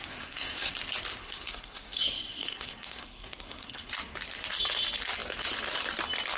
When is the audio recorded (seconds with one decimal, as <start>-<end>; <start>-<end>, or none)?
0.7-1.2; 3.9-6.4